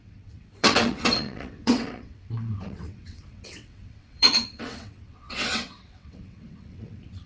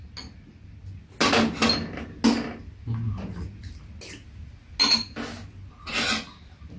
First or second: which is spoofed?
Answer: first